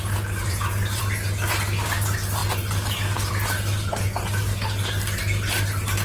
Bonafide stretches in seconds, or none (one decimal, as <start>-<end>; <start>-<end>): 0.0-0.4; 1.0-6.0